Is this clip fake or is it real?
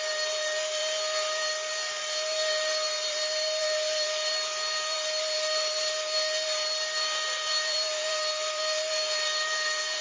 fake